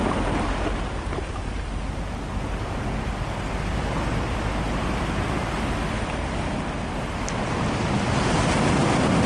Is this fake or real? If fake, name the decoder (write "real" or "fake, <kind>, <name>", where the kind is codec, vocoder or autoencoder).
real